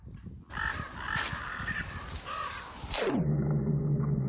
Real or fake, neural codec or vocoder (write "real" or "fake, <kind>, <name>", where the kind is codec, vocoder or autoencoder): real